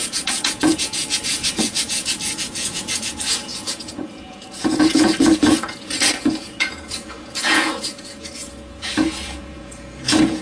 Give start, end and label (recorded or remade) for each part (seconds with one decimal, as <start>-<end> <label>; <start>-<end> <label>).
0.0-10.4 remade